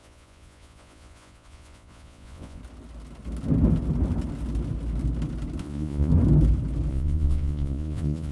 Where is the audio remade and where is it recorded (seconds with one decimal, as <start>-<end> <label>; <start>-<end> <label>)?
0.0-2.6 remade; 2.6-5.6 recorded; 5.6-6.1 remade; 6.1-6.9 recorded; 6.9-8.3 remade